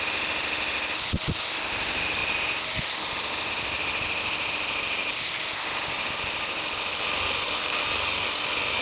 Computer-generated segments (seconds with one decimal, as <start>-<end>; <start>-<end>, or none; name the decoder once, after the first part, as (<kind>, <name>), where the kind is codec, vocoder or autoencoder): none

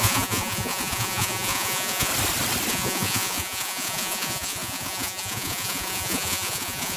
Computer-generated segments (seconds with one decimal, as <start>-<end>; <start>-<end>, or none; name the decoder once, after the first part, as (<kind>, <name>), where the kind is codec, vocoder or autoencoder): 0.0-2.1 (vocoder, Vocos); 2.7-7.0

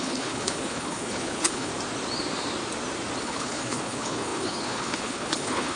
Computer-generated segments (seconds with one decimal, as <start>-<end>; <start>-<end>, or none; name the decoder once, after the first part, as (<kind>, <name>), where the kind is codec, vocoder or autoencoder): 0.0-1.7 (codec, HILCodec); 3.2-5.8

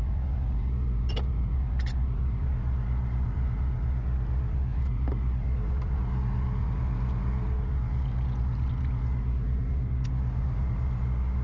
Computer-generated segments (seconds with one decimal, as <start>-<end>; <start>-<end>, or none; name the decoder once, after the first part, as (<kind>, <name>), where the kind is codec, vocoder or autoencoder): none

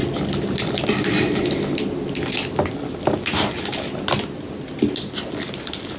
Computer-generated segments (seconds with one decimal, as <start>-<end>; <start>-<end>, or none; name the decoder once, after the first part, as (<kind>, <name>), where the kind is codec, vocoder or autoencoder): none

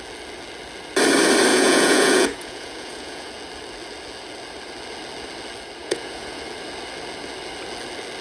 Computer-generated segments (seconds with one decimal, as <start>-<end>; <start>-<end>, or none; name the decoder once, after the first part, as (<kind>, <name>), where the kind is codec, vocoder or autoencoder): 1.5-3.3 (vocoder, Vocos); 5.8-6.4

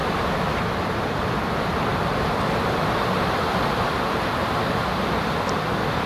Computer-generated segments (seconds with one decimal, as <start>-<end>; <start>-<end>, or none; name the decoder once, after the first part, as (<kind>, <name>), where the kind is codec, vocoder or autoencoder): 0.0-1.9 (vocoder, BigVGAN v2); 3.4-4.4

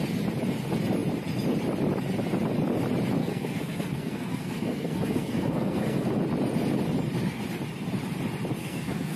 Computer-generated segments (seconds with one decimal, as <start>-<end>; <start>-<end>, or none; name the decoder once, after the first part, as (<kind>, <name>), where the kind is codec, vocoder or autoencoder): 3.2-6.1 (codec, SNAC); 8.6-9.2